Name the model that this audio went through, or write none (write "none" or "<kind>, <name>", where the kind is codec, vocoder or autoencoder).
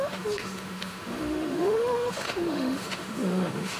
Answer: autoencoder, DAC-VAE